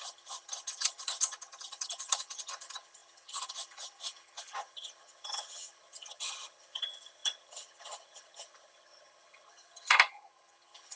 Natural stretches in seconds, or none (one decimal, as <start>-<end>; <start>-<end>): none